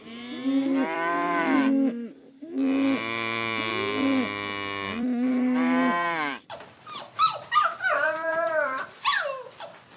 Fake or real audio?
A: fake